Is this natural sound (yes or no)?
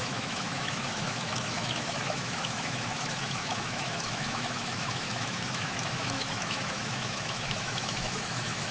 no